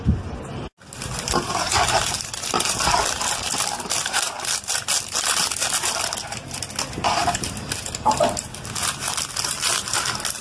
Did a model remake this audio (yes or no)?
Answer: no